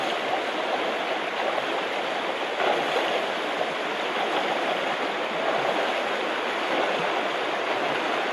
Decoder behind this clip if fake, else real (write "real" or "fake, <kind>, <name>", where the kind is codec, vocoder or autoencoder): real